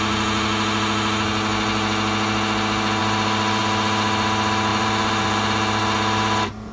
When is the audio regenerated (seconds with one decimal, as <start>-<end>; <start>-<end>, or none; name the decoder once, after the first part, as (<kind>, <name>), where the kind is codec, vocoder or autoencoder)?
4.7-5.8 (vocoder, BigVGAN v2)